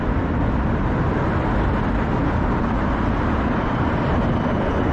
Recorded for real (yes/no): no